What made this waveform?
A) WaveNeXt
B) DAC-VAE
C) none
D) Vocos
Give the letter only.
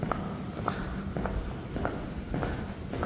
C